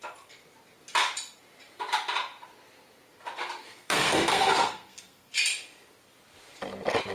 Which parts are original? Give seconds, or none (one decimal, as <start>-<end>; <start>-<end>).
0.0-3.6; 5.3-7.1